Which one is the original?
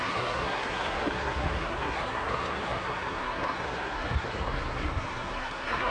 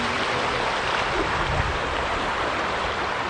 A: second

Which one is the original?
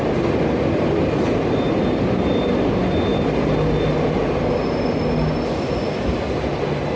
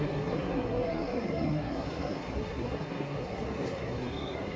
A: first